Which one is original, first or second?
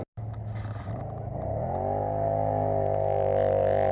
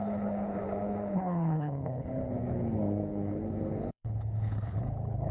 first